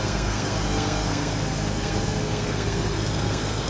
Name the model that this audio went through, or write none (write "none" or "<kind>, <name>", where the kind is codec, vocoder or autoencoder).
codec, SNAC